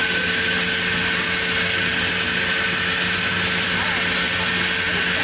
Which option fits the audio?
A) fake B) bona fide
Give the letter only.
B